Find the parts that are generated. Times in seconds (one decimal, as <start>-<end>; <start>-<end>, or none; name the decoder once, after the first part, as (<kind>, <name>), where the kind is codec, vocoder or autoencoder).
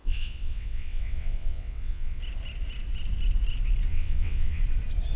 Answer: 0.0-2.2 (vocoder, WaveNeXt); 3.9-4.6